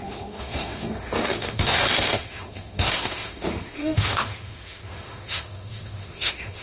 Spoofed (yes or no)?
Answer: yes